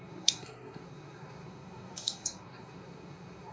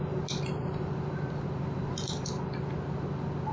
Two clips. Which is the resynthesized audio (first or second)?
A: first